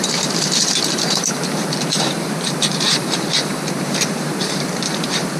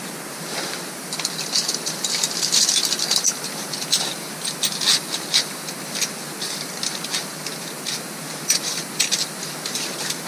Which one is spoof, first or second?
first